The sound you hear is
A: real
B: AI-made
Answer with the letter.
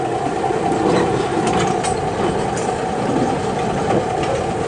A